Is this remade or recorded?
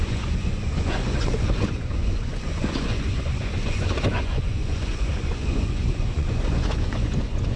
remade